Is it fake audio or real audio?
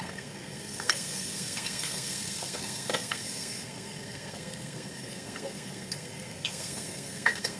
fake